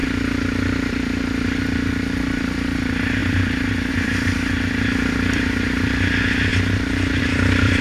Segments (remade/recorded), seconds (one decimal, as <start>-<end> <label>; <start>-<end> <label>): 0.0-0.9 recorded; 0.9-6.5 remade; 6.5-7.2 recorded; 7.2-7.8 remade